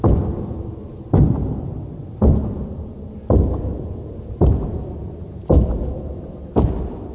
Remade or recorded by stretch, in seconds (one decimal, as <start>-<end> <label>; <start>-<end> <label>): 0.0-2.4 recorded; 2.4-3.1 remade; 3.1-3.7 recorded; 3.7-6.5 remade; 6.5-7.1 recorded